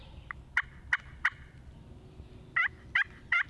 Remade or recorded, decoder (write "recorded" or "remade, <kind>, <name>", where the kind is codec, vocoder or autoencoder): recorded